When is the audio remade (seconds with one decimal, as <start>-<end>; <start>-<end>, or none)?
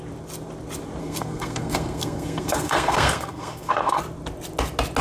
1.0-4.0